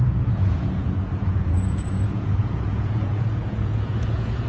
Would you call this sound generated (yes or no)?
yes